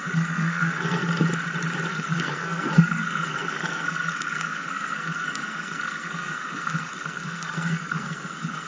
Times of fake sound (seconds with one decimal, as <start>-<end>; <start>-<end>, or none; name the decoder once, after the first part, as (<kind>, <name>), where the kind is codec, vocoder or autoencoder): 0.0-1.0 (codec, SNAC); 1.9-8.7